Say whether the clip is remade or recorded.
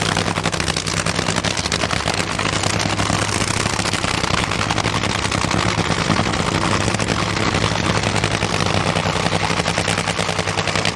recorded